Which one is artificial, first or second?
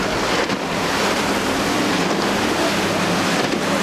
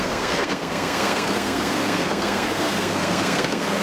second